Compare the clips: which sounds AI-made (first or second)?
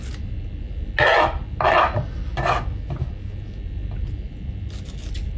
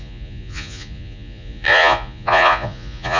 second